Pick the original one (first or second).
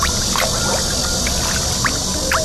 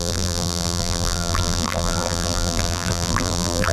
first